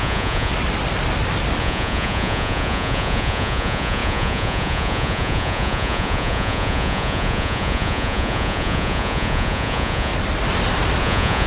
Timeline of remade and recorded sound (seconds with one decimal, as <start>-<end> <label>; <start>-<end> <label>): 0.0-0.5 remade; 0.5-1.6 recorded; 1.6-10.1 remade; 10.1-11.0 recorded; 11.0-11.5 remade